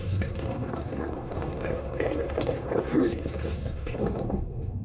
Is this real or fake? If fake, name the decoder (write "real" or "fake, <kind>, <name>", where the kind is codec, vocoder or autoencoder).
fake, codec, SNAC